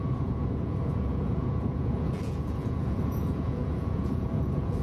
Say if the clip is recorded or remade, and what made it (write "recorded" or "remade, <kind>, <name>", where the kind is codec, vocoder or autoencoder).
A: remade, vocoder, Vocos